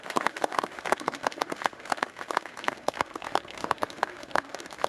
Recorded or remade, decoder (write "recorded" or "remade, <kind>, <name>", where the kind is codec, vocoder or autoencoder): remade, autoencoder, DAC-VAE